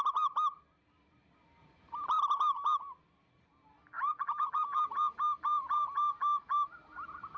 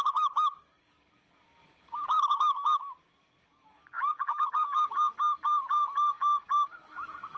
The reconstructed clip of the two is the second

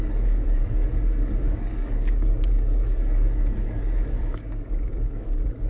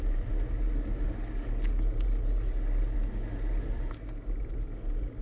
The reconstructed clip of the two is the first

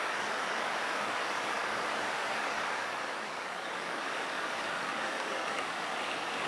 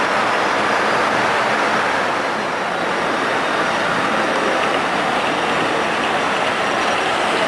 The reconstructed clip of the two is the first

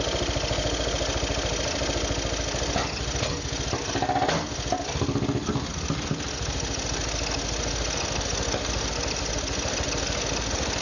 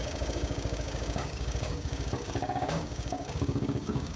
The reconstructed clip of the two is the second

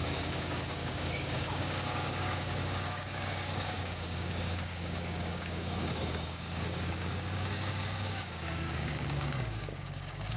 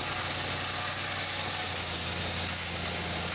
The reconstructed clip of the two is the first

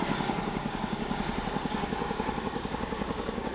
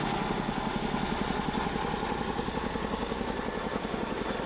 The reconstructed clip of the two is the first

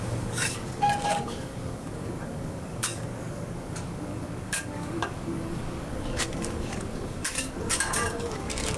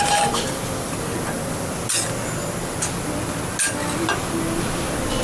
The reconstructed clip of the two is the first